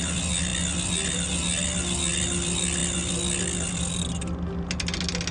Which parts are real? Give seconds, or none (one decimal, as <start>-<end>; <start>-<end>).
0.0-5.3